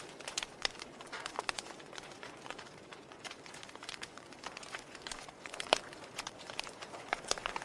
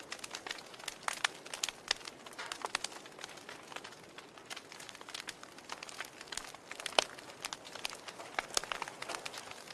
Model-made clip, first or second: first